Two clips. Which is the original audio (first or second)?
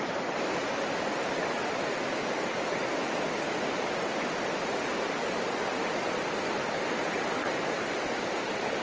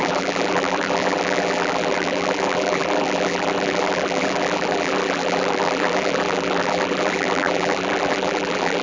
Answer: first